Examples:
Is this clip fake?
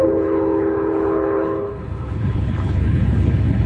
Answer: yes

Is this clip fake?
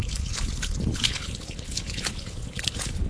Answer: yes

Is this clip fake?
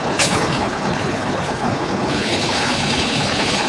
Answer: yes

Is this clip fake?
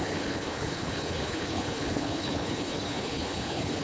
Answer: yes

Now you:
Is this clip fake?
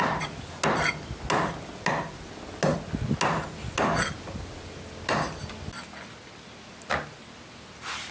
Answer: no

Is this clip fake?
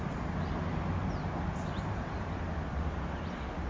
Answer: no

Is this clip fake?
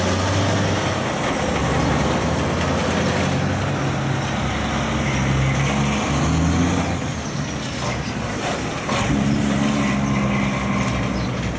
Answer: no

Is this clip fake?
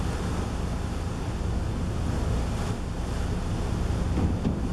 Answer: no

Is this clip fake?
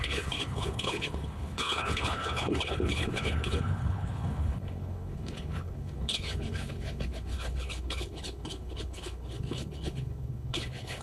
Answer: yes